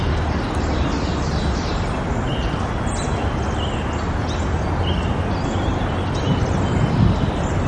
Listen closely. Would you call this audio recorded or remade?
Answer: recorded